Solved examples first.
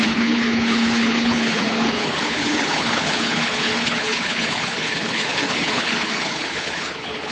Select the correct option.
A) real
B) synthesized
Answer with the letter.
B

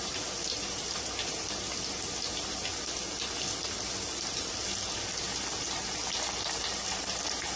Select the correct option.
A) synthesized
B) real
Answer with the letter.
B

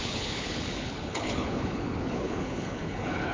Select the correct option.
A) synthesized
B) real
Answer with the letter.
A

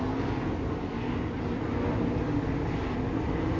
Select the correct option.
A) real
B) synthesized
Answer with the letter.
A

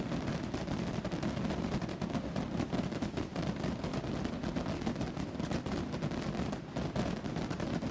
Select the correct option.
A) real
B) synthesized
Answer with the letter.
A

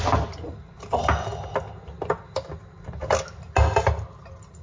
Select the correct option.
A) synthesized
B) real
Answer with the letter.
B